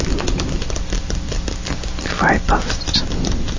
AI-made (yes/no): no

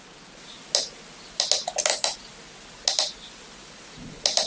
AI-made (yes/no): no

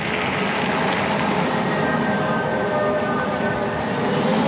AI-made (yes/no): no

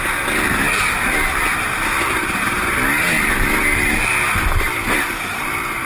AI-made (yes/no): no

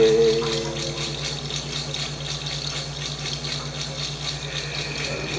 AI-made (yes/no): no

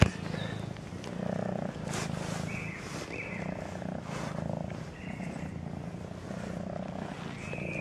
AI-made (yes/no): no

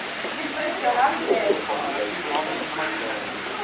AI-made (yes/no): no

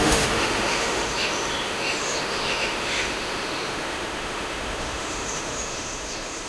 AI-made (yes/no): yes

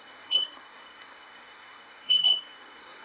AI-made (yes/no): yes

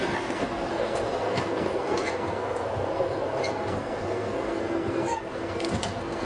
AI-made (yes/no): yes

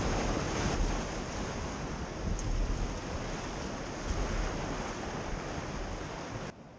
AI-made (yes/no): no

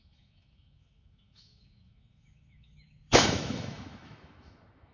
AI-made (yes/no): yes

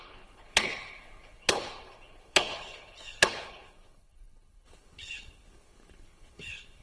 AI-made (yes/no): yes